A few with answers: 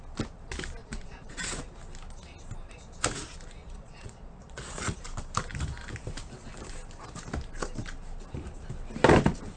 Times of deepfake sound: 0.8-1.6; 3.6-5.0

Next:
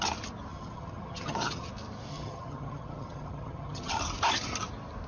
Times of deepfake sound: 0.5-1.7; 2.1-3.9

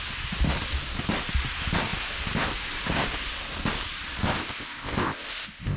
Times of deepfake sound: 4.4-5.8

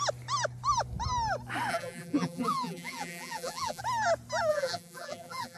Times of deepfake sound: 1.7-3.8; 4.5-5.6

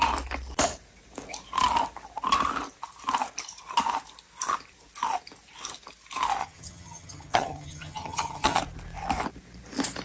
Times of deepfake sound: 6.4-8.6

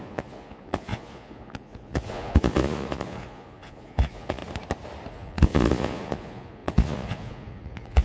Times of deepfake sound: 0.0-4.4; 5.1-8.0

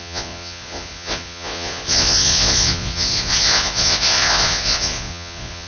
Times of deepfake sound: 0.0-5.7